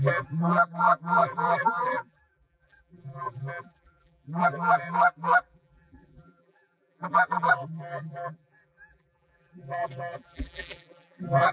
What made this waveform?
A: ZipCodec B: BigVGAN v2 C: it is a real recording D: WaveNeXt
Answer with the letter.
B